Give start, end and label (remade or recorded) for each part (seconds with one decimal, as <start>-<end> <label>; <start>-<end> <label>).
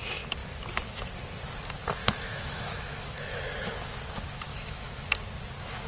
0.0-2.0 recorded; 2.0-3.4 remade; 3.4-4.5 recorded; 4.5-5.1 remade; 5.1-5.9 recorded